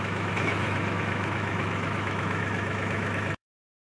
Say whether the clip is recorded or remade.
remade